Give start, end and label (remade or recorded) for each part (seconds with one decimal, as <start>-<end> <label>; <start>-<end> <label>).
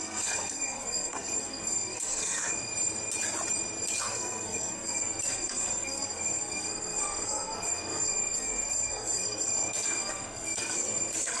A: 0.0-2.7 remade; 2.7-4.0 recorded; 4.0-11.4 remade